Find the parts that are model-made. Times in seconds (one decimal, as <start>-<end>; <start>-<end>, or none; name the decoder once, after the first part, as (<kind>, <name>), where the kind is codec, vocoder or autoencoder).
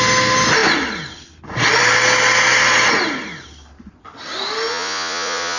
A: 4.7-5.6 (vocoder, Vocos)